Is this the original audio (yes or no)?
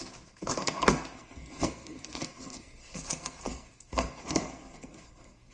no